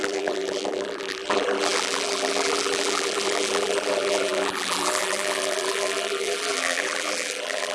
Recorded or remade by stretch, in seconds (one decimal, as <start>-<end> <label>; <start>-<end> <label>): 0.0-7.7 remade